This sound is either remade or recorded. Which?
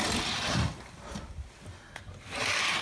recorded